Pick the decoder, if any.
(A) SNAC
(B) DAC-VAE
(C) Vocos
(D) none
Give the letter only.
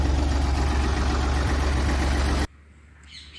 D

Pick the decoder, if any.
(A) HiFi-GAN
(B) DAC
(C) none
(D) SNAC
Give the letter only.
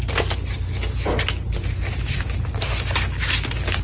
C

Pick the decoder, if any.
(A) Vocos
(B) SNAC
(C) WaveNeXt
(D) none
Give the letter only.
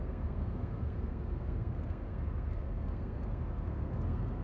B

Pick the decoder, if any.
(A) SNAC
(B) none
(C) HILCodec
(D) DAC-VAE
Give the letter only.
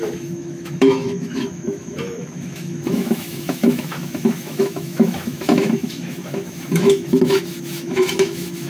D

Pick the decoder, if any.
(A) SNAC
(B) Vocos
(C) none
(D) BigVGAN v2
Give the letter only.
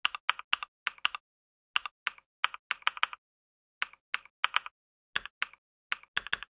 C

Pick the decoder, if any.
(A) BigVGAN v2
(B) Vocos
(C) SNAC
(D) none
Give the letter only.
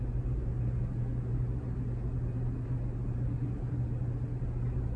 D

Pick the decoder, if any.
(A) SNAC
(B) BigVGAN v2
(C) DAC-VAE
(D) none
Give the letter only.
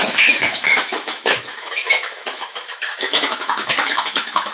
C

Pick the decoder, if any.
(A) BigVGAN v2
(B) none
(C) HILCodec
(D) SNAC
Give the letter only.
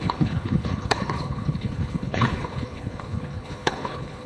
C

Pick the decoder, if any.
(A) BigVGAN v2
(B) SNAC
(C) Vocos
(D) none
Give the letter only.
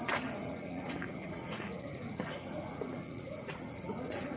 C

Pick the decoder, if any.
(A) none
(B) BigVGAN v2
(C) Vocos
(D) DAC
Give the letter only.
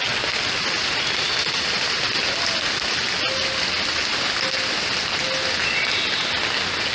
A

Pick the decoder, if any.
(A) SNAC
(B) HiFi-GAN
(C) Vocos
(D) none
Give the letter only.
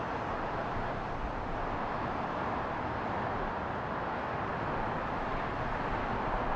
D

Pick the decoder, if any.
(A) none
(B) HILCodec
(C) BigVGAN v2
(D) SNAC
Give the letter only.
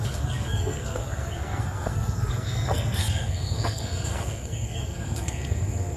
D